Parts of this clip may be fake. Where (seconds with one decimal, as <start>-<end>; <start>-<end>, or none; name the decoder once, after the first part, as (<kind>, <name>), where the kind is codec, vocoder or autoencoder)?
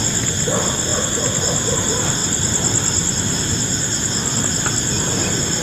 2.2-4.4 (vocoder, BigVGAN v2)